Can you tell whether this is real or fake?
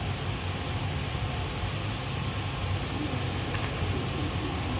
real